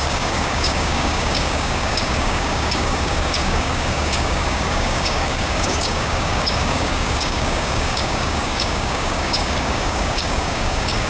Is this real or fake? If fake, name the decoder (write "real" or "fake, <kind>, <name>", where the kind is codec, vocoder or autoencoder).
fake, codec, DAC